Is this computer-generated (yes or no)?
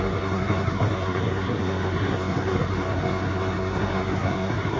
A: yes